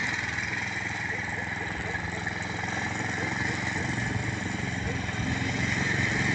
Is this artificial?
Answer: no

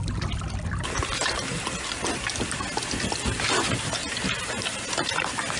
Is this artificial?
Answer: no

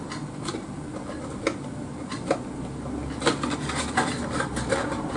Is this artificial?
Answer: no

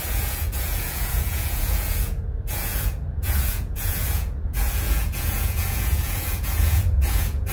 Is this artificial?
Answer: yes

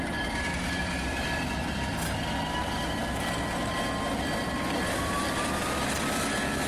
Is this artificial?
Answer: no